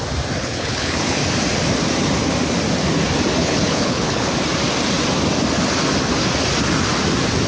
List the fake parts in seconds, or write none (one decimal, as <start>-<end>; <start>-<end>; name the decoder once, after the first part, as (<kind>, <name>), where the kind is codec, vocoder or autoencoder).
0.4-1.2 (codec, HILCodec); 3.4-4.3